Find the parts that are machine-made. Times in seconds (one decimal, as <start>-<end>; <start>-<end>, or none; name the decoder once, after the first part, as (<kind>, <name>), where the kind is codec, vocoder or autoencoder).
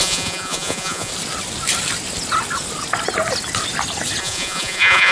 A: 0.0-1.1 (vocoder, Vocos); 4.2-5.1